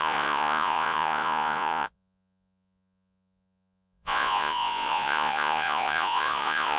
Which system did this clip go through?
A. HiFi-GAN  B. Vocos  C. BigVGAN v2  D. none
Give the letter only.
B